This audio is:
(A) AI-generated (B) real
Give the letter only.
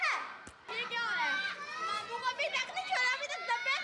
B